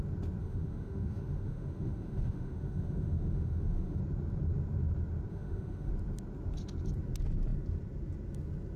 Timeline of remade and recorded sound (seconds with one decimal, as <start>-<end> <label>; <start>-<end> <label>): 0.0-0.4 recorded; 0.4-4.0 remade; 4.0-5.3 recorded; 5.3-5.9 remade; 5.9-8.8 recorded